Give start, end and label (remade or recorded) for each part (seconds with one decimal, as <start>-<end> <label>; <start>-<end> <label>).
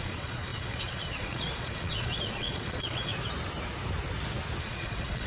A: 0.0-3.1 remade; 3.1-4.6 recorded; 4.6-5.3 remade